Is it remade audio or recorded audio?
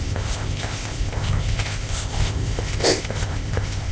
remade